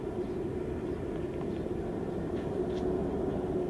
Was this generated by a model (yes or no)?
no